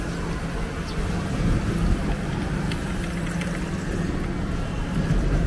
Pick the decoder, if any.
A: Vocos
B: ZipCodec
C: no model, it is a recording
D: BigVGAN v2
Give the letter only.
C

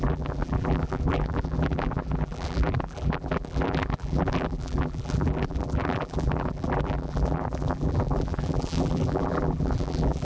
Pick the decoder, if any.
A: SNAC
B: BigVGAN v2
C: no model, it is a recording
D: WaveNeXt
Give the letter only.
B